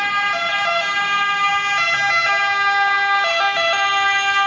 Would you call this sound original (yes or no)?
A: yes